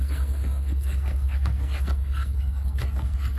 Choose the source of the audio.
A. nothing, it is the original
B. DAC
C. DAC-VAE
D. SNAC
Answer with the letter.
D